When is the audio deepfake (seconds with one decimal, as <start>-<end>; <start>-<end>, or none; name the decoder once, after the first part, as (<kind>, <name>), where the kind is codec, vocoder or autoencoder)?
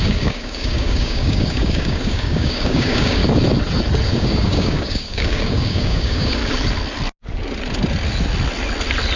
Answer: 0.0-3.2 (codec, DAC); 4.1-6.4